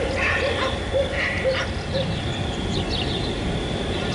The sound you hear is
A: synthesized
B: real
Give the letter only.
B